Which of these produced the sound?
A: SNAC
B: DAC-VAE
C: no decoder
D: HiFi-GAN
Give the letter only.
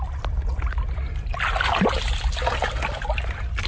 C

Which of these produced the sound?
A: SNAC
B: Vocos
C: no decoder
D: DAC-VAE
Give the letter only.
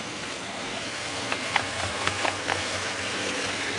A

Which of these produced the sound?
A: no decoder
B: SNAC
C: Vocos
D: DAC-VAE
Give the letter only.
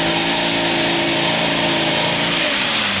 A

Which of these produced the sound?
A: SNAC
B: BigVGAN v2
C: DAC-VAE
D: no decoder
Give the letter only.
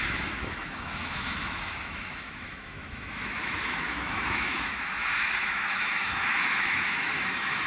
C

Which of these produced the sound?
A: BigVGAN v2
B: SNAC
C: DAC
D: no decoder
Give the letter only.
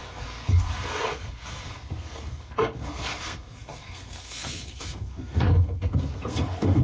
B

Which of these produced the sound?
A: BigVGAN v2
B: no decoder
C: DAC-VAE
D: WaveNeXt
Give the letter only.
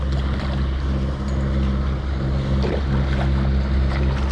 B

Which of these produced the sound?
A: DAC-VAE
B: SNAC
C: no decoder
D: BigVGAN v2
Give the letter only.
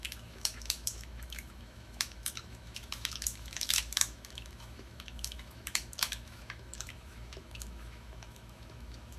A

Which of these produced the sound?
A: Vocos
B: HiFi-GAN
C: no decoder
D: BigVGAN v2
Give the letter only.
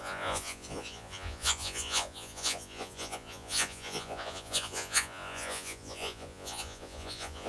A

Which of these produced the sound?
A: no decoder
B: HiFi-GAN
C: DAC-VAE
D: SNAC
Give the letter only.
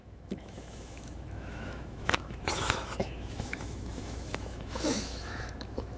C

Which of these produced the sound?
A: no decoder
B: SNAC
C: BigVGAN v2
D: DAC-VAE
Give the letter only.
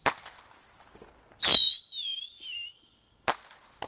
A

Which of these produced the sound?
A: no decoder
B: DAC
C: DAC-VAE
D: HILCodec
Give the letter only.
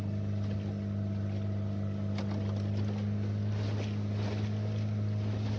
A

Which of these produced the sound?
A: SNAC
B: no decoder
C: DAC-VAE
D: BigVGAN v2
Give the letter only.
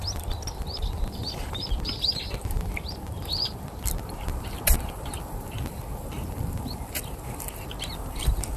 B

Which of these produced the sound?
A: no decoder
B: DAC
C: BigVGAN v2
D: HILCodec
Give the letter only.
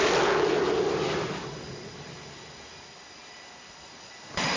A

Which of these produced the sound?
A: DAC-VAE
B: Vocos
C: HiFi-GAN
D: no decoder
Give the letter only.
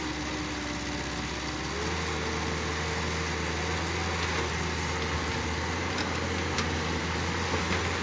D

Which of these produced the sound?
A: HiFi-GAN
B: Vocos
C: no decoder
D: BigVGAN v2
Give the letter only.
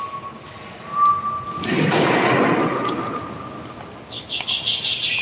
C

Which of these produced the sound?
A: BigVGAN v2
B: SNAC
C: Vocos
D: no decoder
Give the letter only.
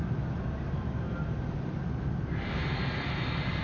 D